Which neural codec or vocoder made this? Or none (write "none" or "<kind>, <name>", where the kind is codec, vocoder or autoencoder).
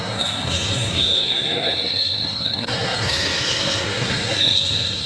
codec, SNAC